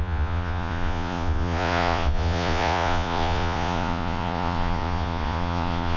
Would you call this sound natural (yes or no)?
no